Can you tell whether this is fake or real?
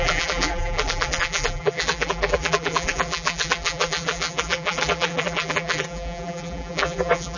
fake